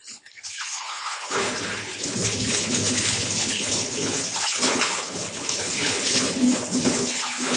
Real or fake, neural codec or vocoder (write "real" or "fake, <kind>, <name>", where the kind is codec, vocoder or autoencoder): fake, codec, HILCodec